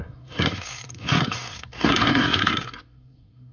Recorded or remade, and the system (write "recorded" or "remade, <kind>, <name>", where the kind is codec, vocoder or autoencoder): remade, codec, SNAC